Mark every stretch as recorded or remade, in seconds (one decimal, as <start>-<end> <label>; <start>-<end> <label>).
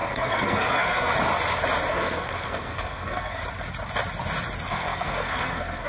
0.0-1.1 remade; 1.1-1.9 recorded; 1.9-3.4 remade; 3.4-4.7 recorded; 4.7-5.9 remade